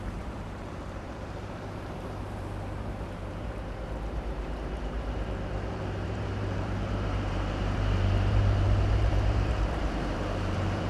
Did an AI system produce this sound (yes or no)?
yes